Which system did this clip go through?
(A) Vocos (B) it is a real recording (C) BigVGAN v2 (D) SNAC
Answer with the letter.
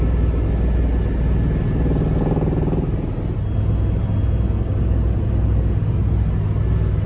B